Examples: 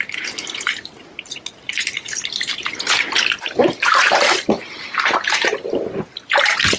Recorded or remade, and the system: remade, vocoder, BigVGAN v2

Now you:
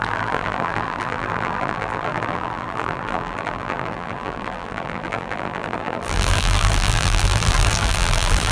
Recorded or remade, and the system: remade, vocoder, BigVGAN v2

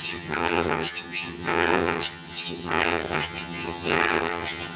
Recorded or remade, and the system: remade, vocoder, HiFi-GAN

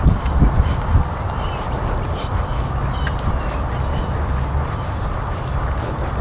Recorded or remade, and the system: recorded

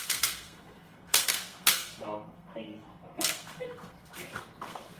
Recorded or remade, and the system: remade, codec, SNAC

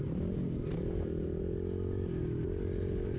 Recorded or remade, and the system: recorded